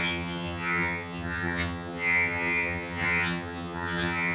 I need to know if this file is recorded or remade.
remade